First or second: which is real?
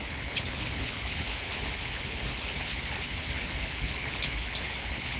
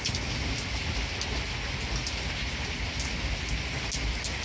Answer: second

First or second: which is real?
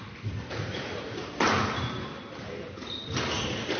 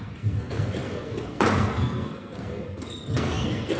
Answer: first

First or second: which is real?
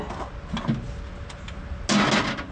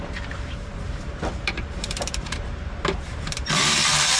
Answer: first